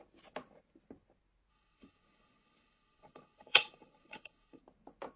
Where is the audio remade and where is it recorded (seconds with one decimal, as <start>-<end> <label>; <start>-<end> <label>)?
0.0-1.5 recorded; 1.5-4.6 remade; 4.6-5.2 recorded